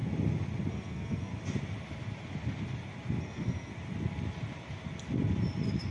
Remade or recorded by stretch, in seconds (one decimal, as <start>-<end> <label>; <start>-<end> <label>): 0.0-0.7 recorded; 0.7-1.3 remade; 1.3-3.2 recorded; 3.2-3.7 remade; 3.7-5.9 recorded